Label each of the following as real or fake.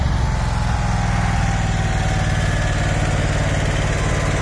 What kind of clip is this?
real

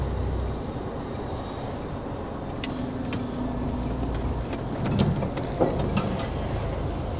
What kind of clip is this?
real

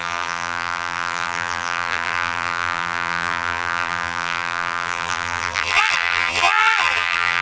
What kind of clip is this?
fake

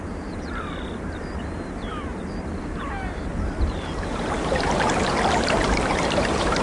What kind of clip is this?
fake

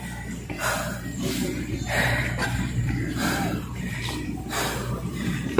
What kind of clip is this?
fake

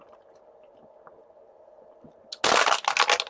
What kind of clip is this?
real